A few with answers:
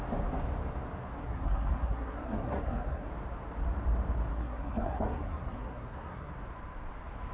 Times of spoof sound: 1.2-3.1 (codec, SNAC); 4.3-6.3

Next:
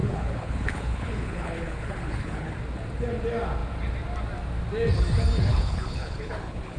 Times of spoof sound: 0.0-2.5 (codec, HILCodec); 5.5-6.8

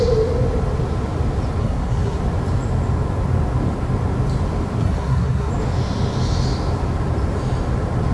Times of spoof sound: 1.6-2.2 (codec, SNAC); 4.8-5.5

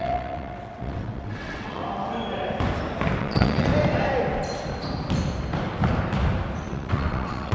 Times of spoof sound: 0.0-1.8 (vocoder, WaveNeXt); 3.2-3.7; 6.6-7.5

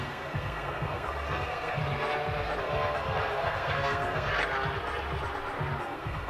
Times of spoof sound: 0.0-1.8 (codec, SNAC); 2.6-4.3; 5.8-6.3

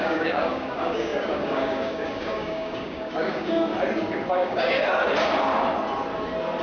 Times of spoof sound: 0.0-3.7 (codec, DAC); 4.3-4.8

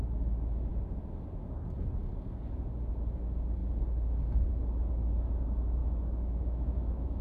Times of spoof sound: 5.8-7.2 (autoencoder, DAC-VAE)

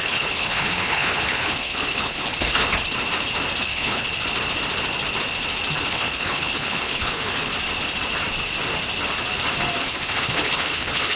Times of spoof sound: 0.0-2.7 (codec, HILCodec); 3.6-4.1; 5.9-7.5; 9.8-11.2